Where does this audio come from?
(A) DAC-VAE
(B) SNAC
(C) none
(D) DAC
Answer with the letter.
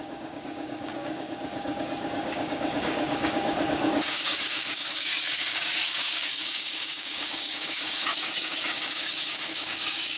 D